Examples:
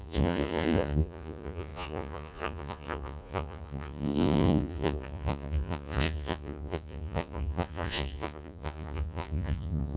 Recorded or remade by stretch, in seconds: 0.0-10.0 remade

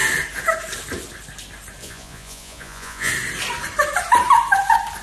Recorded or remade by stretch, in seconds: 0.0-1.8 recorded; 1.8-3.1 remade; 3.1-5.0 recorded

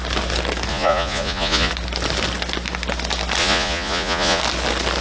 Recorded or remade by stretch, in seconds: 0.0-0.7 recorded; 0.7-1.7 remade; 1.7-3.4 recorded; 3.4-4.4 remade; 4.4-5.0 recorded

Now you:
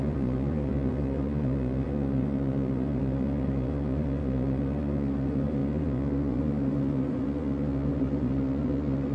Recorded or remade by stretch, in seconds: 0.0-9.1 remade

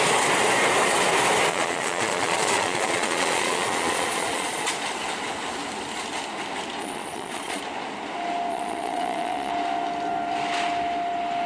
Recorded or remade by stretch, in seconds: 0.0-1.5 recorded; 1.5-4.7 remade; 4.7-6.8 recorded; 6.8-7.6 remade; 7.6-8.5 recorded; 8.5-9.5 remade; 9.5-11.5 recorded